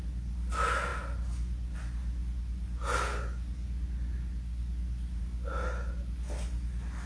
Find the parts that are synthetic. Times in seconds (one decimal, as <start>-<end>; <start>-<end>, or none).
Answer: none

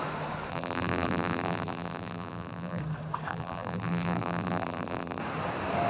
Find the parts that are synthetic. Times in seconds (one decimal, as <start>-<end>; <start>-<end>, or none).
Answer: 0.5-2.8; 3.3-5.2

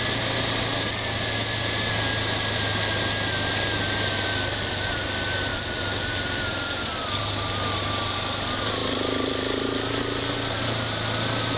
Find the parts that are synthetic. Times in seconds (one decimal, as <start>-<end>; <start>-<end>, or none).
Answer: 5.5-6.4

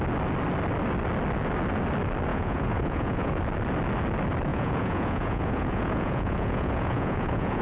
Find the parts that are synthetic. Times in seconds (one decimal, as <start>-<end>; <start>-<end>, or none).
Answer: 2.3-3.4; 4.5-7.6

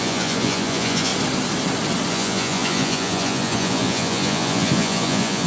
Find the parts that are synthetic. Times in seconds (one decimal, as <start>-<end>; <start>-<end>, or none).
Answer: 0.0-1.1; 2.1-5.5

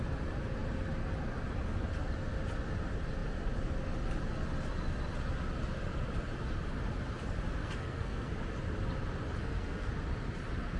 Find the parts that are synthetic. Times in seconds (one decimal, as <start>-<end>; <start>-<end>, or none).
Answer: 7.6-8.3; 9.4-9.9

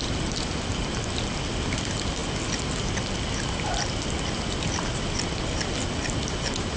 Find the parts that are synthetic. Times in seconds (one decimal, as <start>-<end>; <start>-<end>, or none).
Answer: none

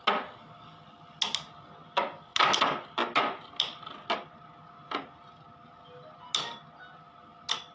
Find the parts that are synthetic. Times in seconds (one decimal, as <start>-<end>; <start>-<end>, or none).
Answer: none